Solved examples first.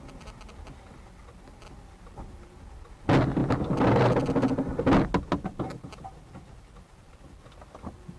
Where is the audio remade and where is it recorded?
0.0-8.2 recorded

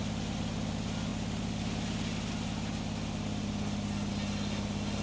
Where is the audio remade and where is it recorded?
0.0-5.0 recorded

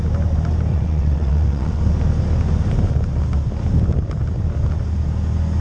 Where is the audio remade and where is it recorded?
0.0-0.7 recorded; 0.7-1.8 remade; 1.8-5.6 recorded

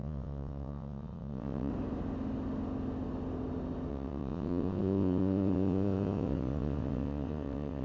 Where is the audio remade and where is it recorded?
0.0-1.7 remade; 1.7-3.9 recorded; 3.9-7.8 remade

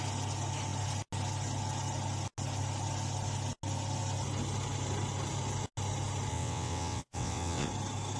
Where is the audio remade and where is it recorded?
0.0-6.3 recorded; 6.3-7.7 remade; 7.7-8.2 recorded